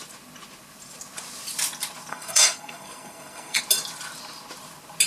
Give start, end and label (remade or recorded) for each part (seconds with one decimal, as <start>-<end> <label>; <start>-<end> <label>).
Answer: 0.0-2.1 recorded; 2.1-3.6 remade; 3.6-5.1 recorded

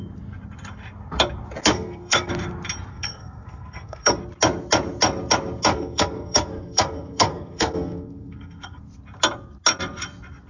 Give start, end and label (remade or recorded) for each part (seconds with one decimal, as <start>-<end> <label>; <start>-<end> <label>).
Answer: 0.0-1.7 recorded; 1.7-2.3 remade; 2.3-2.9 recorded; 2.9-4.2 remade; 4.2-5.7 recorded; 5.7-8.8 remade; 8.8-10.5 recorded

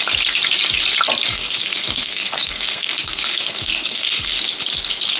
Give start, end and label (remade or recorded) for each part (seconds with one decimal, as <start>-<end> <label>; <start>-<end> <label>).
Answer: 0.0-1.3 recorded; 1.3-4.4 remade; 4.4-5.2 recorded